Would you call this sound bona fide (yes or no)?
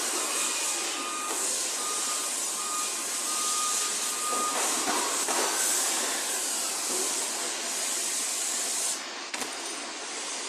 yes